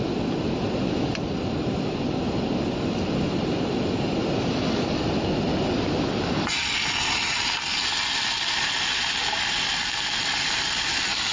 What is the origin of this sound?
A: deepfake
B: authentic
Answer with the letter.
B